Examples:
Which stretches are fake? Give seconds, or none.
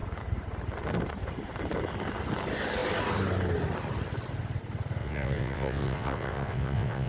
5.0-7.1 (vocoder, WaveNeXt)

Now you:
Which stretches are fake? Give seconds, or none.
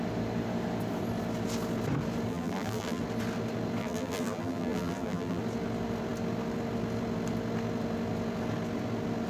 2.3-3.0 (vocoder, BigVGAN v2); 3.8-5.4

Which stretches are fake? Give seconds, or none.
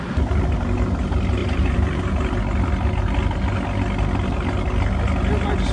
1.4-2.4 (vocoder, BigVGAN v2)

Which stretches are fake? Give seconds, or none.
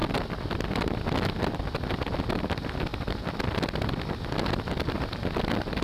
none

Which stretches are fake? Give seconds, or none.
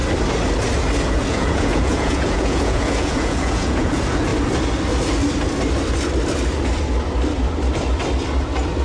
1.1-4.3 (vocoder, Vocos)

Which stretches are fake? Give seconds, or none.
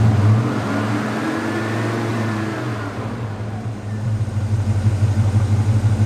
2.1-4.3 (vocoder, BigVGAN v2)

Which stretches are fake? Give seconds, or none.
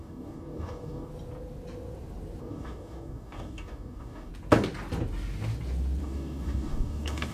0.0-1.1 (codec, DAC); 2.4-4.3; 6.0-7.3